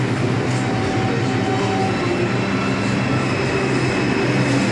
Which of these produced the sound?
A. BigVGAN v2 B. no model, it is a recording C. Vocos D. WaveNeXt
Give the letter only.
B